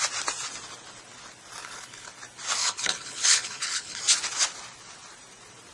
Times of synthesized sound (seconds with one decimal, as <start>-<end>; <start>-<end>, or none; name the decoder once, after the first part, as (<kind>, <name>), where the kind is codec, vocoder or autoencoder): 1.6-2.1 (codec, HILCodec); 2.6-4.0